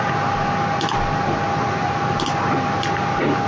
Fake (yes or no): no